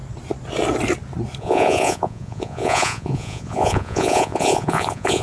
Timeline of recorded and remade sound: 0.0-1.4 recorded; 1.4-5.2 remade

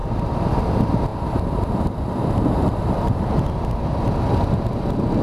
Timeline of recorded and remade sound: 0.0-5.2 recorded